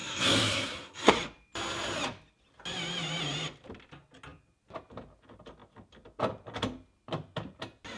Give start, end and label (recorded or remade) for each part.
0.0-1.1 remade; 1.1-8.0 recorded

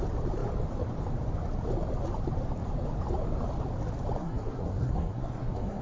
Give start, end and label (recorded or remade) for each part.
0.0-4.2 recorded; 4.2-5.8 remade

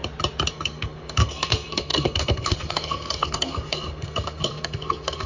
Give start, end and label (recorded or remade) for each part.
0.0-0.5 recorded; 0.5-5.3 remade

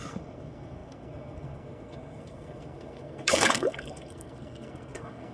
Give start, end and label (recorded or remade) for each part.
0.0-5.3 remade